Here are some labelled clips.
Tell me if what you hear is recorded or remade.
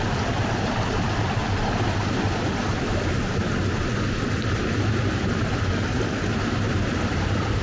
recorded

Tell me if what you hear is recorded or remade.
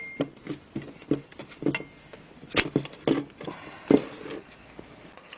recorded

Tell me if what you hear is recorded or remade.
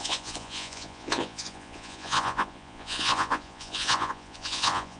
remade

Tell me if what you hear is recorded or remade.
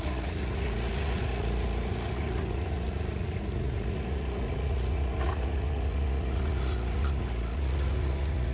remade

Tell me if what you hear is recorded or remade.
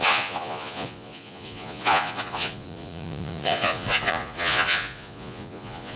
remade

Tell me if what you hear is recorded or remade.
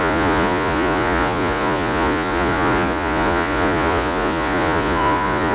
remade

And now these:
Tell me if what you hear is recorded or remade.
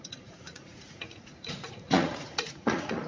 remade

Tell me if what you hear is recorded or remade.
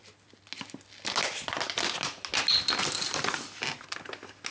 recorded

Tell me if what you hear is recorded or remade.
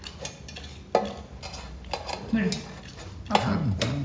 recorded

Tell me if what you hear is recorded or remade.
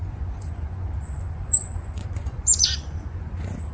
remade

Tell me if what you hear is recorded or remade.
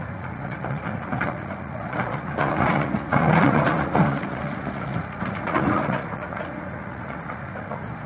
remade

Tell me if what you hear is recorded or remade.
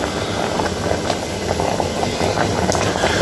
recorded